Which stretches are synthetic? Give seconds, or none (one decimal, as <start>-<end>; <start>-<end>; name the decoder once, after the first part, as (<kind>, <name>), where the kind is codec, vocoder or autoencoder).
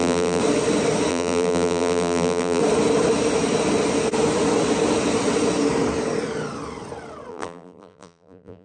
0.0-0.4 (vocoder, BigVGAN v2); 1.1-2.6; 7.3-8.6